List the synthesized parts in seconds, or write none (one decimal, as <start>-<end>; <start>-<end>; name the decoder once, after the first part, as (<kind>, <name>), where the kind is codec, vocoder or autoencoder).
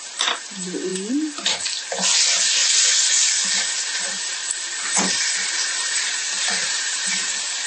0.0-0.9 (vocoder, BigVGAN v2); 3.7-7.7